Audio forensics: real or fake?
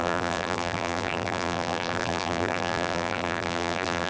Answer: fake